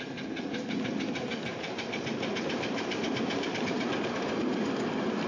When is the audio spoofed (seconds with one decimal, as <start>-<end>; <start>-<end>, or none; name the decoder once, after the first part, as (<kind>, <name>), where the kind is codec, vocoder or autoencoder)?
1.5-4.3 (vocoder, BigVGAN v2)